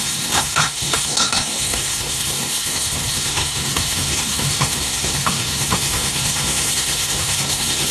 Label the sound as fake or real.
fake